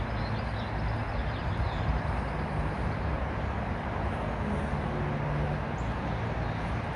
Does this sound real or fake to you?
real